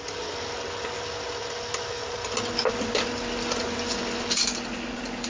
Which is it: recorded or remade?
recorded